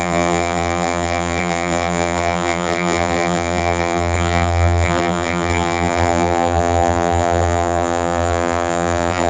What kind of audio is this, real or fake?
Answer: fake